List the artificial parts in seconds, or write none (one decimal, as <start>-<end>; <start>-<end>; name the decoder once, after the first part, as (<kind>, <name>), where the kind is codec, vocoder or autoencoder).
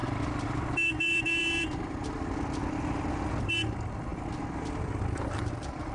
0.0-5.9 (vocoder, BigVGAN v2)